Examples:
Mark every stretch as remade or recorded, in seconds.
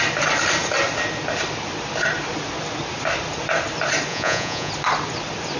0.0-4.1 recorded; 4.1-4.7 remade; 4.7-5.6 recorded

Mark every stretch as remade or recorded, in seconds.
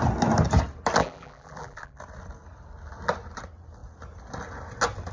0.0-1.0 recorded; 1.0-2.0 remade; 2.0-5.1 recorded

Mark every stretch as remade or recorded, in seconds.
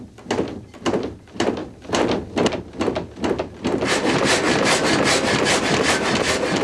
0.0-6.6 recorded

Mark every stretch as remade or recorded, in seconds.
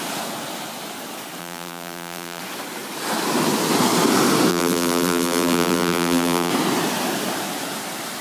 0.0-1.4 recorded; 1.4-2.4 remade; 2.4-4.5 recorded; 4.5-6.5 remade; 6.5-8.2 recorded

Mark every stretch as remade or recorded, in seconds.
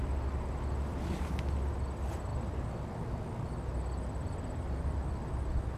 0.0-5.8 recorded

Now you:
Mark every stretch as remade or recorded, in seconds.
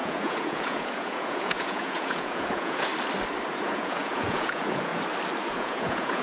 0.0-2.9 remade; 2.9-3.6 recorded; 3.6-4.9 remade; 4.9-5.5 recorded; 5.5-6.2 remade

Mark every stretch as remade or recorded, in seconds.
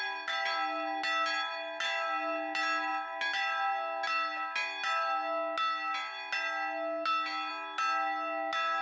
0.0-8.8 recorded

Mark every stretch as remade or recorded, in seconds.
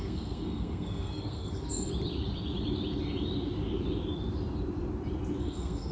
0.0-1.9 remade; 1.9-5.4 recorded; 5.4-5.9 remade